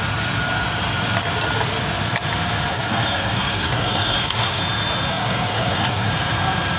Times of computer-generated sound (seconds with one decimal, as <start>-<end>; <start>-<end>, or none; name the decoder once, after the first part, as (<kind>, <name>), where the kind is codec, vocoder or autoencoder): 2.7-4.6 (codec, SNAC); 5.1-6.1